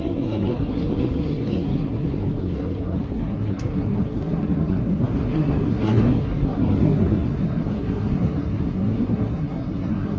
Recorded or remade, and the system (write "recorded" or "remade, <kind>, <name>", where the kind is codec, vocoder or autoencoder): remade, codec, SNAC